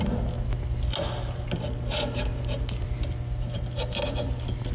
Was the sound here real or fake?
real